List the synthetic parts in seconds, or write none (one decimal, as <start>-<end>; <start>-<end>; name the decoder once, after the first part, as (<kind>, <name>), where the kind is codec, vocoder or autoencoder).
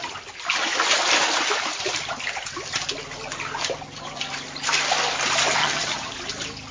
5.6-6.1 (vocoder, HiFi-GAN)